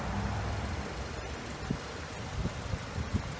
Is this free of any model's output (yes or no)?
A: yes